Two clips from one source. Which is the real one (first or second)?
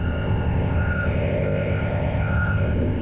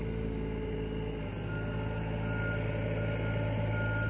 second